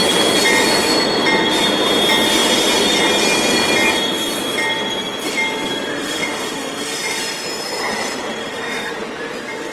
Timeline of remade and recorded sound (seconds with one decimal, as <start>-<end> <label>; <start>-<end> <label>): 0.0-5.9 recorded; 5.9-7.2 remade; 7.2-8.4 recorded; 8.4-8.9 remade; 8.9-9.7 recorded